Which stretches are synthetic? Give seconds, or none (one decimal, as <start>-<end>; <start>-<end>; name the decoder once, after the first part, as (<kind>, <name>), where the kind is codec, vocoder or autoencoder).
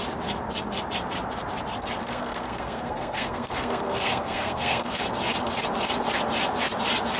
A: 2.0-5.0 (codec, SNAC)